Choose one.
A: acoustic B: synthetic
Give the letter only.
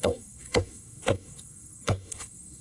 B